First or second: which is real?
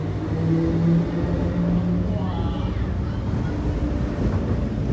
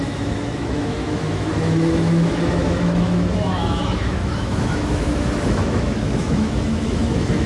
first